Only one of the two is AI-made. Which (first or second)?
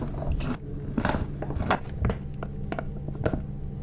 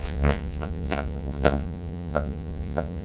second